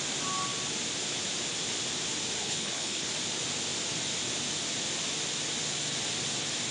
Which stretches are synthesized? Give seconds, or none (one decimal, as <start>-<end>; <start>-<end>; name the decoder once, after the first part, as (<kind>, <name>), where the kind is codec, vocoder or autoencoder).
2.4-3.1 (codec, HILCodec)

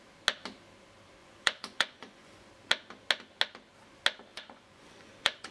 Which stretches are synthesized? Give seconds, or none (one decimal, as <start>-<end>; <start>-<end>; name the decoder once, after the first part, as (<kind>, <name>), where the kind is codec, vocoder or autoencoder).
1.2-2.5 (vocoder, Vocos); 4.3-5.5

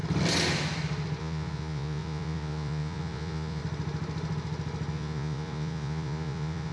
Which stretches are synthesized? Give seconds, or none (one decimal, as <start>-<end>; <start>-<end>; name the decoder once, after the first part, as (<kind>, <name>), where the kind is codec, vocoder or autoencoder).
1.2-3.6 (vocoder, Vocos); 4.9-6.7

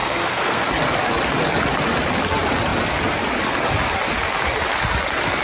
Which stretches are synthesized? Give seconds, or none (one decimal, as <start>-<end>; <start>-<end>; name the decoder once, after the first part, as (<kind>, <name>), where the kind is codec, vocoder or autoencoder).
0.0-0.7 (codec, SNAC)

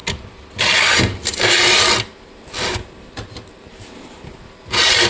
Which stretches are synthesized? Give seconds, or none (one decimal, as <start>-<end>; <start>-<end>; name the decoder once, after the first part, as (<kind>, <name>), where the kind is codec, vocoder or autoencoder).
none

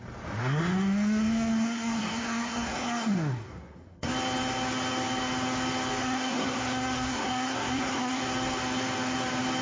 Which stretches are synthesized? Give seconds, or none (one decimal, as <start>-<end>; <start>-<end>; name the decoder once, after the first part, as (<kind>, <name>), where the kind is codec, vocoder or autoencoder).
0.4-4.1 (codec, SNAC); 6.0-8.2

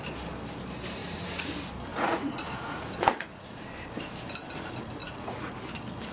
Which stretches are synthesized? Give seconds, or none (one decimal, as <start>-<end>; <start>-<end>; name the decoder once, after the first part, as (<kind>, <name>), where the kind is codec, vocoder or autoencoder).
1.0-1.5 (vocoder, Vocos); 1.9-3.6; 5.0-5.5

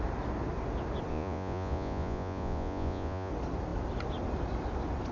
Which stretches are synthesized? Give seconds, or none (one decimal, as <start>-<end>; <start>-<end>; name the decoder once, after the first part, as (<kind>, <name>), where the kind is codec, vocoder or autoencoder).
1.1-3.3 (vocoder, Vocos)